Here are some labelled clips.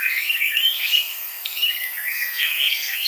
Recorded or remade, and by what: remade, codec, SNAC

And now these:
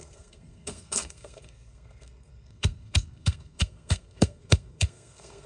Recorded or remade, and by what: remade, codec, SNAC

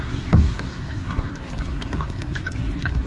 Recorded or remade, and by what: remade, codec, SNAC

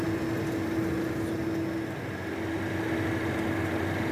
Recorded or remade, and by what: recorded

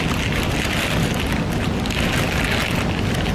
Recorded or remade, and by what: recorded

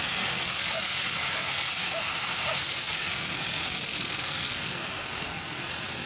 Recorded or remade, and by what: remade, codec, SNAC